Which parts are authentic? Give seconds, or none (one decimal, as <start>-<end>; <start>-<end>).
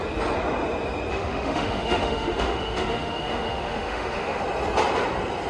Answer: 0.0-1.1; 4.4-5.5